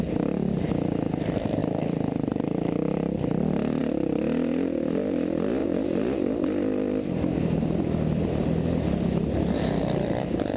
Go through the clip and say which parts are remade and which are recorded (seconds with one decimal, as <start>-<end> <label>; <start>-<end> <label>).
0.0-10.6 remade